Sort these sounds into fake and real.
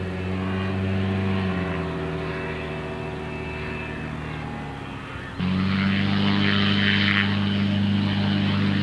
real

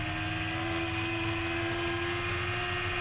real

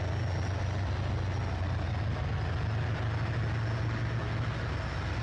real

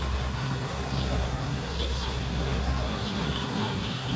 fake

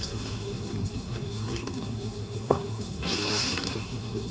fake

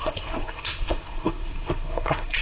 fake